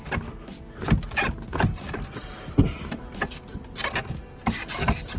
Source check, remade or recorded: recorded